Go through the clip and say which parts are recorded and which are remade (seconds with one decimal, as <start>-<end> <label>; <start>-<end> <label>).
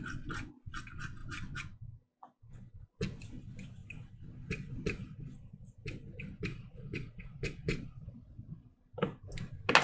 0.0-6.5 recorded; 6.5-8.8 remade; 8.8-9.8 recorded